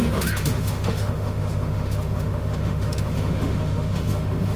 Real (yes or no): no